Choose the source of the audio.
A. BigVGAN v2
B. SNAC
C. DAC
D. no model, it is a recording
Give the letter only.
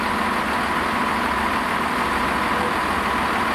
D